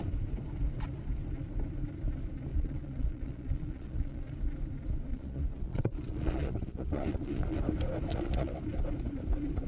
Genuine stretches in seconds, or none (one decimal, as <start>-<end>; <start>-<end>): 0.0-2.5; 4.2-5.1; 7.6-8.1; 8.6-9.7